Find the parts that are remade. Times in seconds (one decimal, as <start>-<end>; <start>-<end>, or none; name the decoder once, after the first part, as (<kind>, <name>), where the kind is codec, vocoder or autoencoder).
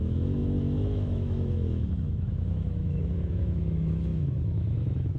0.0-5.2 (autoencoder, DAC-VAE)